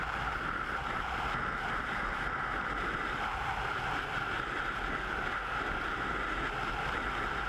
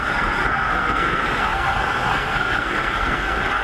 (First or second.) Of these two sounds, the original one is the first